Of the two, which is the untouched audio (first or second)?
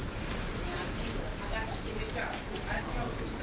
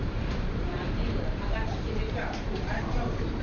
first